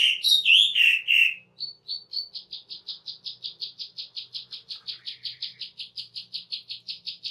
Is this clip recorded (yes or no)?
yes